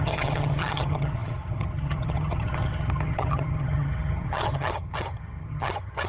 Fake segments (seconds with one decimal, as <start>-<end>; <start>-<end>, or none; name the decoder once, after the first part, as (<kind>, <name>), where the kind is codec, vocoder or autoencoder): 0.0-6.1 (vocoder, HiFi-GAN)